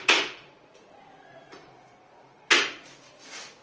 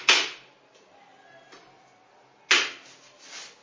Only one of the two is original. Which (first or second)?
second